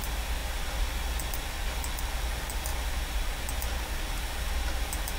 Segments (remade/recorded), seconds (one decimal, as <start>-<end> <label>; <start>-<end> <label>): 0.0-5.2 recorded